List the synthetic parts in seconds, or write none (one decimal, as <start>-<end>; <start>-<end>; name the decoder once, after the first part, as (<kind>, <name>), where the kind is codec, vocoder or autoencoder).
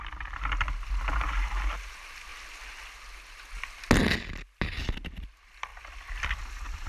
none